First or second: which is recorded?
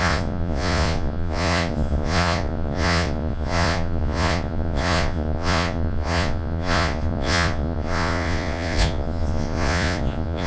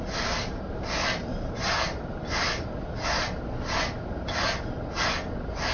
second